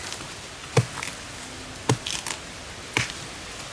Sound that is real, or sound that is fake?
real